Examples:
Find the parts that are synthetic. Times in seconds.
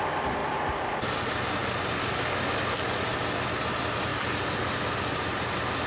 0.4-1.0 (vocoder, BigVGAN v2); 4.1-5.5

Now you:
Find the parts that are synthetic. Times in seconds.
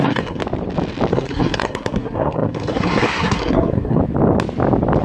0.0-0.4 (codec, SNAC); 1.1-4.0